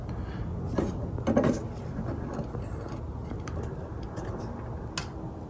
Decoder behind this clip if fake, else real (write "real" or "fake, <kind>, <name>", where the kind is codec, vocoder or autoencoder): real